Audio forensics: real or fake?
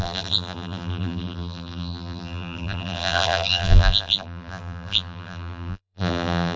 fake